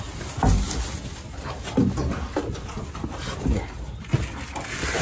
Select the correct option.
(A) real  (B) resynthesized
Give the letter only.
A